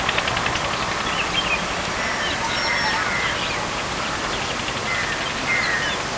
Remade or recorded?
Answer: recorded